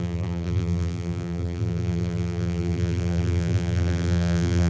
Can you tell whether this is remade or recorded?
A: remade